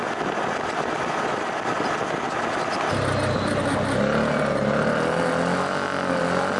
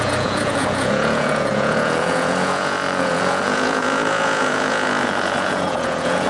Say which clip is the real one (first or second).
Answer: first